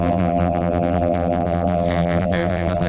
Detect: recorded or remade remade